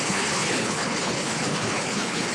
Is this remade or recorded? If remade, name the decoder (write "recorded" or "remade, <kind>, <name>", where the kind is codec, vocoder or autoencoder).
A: remade, codec, HILCodec